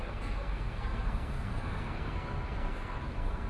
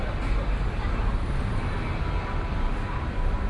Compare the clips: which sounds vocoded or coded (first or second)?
first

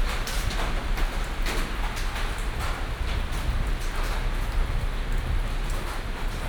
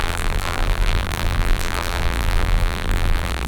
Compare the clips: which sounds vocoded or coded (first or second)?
second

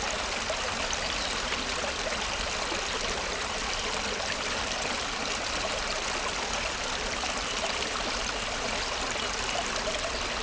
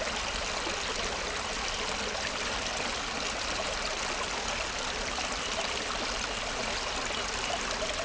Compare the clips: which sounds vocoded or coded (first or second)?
first